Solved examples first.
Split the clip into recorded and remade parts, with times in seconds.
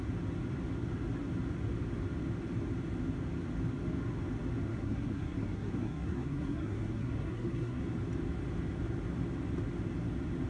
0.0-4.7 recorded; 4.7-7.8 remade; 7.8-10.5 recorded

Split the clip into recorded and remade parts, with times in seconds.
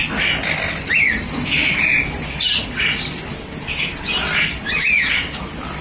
0.0-5.8 recorded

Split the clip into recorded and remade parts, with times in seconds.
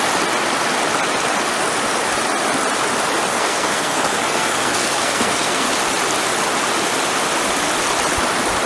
0.0-3.3 recorded; 3.3-5.7 remade; 5.7-8.7 recorded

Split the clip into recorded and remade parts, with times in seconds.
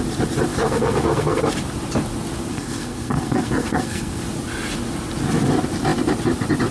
0.0-0.5 recorded; 0.5-1.4 remade; 1.4-2.5 recorded; 2.5-4.2 remade; 4.2-6.7 recorded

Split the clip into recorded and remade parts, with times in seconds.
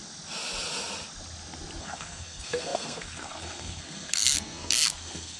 0.0-1.8 recorded; 1.8-5.4 remade